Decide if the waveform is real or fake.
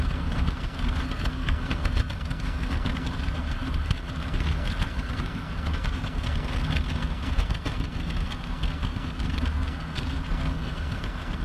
fake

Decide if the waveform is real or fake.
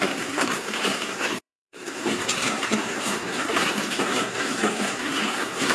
fake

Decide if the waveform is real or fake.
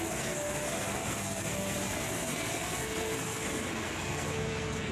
fake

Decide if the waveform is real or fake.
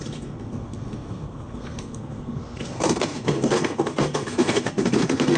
fake